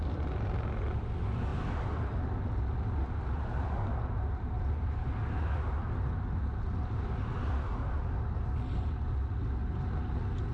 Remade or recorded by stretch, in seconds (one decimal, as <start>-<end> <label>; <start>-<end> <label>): 0.0-10.5 recorded